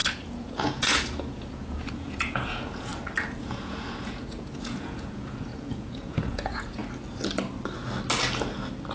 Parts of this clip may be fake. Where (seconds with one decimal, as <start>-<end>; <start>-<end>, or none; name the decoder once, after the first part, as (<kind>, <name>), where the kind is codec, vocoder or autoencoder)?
0.0-2.9 (vocoder, Vocos); 3.4-6.8